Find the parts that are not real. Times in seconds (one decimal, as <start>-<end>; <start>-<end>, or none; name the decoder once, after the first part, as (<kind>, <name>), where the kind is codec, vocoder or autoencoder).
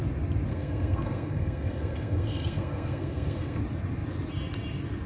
0.5-3.6 (codec, SNAC)